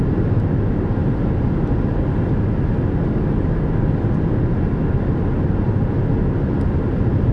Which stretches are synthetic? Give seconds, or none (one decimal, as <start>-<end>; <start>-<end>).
none

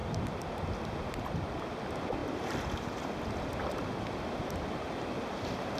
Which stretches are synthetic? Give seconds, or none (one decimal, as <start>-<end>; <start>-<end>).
none